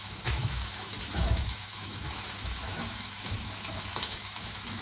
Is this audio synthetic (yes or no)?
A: yes